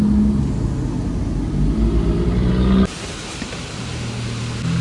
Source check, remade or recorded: recorded